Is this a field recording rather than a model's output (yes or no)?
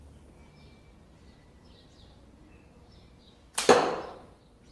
yes